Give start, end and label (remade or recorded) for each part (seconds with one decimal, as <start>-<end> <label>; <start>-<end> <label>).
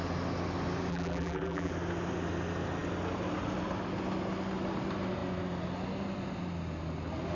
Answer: 0.0-0.9 recorded; 0.9-1.7 remade; 1.7-7.3 recorded